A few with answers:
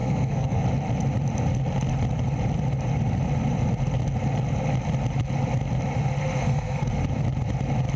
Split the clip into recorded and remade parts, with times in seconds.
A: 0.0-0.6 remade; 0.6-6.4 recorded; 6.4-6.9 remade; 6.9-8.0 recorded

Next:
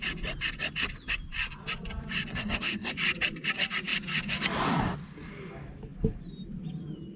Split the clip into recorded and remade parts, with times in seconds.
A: 0.0-2.3 recorded; 2.3-2.9 remade; 2.9-7.2 recorded